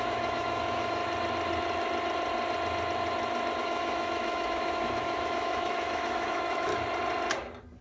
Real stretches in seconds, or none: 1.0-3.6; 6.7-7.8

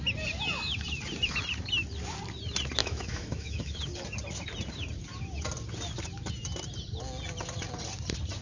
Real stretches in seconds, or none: 0.0-2.8; 3.8-8.4

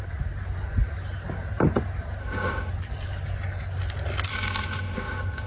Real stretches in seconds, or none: 0.0-2.2; 2.7-4.3

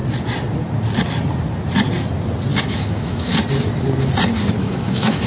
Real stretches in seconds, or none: 0.0-2.6; 3.3-4.6

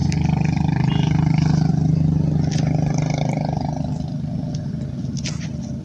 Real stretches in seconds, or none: 0.0-5.8

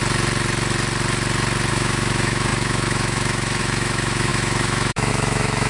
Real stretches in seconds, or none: 0.0-1.7

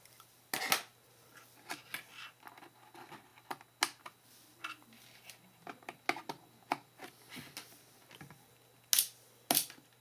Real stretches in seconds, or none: 0.0-10.0